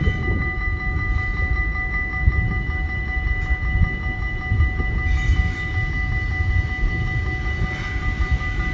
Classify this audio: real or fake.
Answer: real